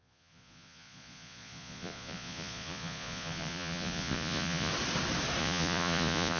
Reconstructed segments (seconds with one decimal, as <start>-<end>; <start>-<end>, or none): 0.0-4.7; 5.4-6.4